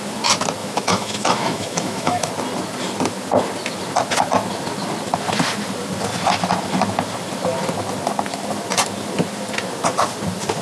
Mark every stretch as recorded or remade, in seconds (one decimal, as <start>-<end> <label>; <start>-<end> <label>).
0.0-0.6 recorded; 0.6-2.3 remade; 2.3-10.6 recorded